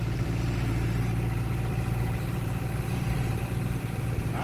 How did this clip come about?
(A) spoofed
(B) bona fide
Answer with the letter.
A